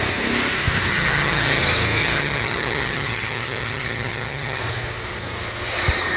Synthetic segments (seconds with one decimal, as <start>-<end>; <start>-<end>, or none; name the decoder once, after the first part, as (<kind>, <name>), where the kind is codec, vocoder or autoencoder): 0.9-1.6 (vocoder, HiFi-GAN); 2.0-4.6